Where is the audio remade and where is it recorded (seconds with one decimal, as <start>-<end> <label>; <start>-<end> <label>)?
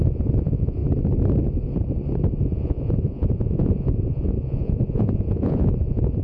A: 0.0-0.8 remade; 0.8-2.4 recorded; 2.4-6.2 remade